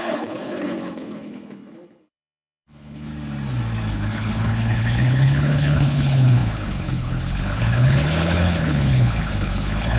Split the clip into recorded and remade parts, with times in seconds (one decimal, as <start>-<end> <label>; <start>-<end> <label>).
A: 0.0-3.1 remade; 3.1-3.9 recorded; 3.9-10.0 remade